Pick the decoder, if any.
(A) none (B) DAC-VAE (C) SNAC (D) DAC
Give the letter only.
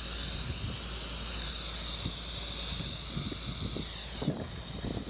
A